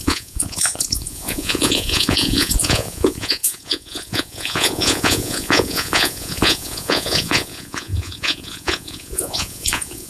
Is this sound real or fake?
fake